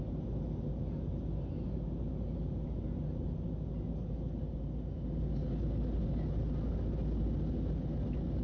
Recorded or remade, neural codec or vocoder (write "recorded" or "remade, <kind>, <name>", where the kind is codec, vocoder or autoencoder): recorded